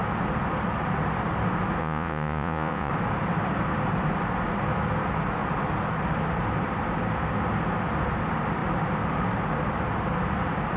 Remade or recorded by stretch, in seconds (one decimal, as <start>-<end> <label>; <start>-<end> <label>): 0.0-1.8 recorded; 1.8-2.9 remade; 2.9-10.8 recorded